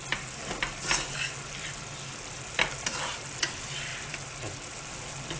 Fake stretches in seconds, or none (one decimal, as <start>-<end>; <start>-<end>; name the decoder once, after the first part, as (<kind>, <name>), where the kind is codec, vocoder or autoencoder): none